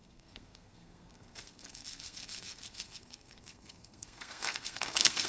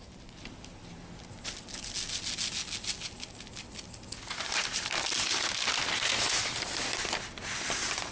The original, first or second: second